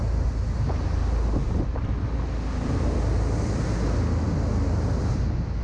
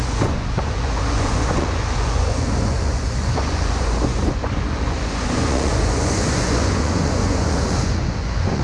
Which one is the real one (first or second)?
first